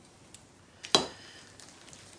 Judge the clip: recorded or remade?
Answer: recorded